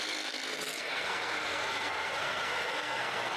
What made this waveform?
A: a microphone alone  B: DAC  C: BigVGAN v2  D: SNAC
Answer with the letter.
D